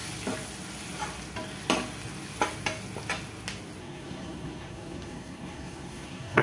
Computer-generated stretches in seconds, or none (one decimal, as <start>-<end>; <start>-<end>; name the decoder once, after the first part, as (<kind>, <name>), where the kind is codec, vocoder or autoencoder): 3.8-6.4 (codec, SNAC)